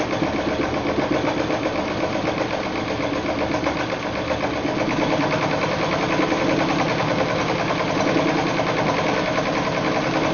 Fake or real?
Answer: real